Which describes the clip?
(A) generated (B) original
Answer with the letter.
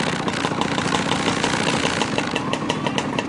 B